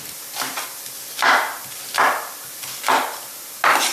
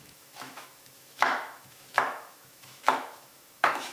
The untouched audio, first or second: first